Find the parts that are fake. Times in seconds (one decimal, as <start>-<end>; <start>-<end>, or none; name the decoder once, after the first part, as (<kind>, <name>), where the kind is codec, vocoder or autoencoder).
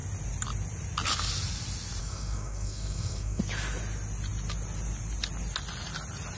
2.0-3.4 (codec, SNAC)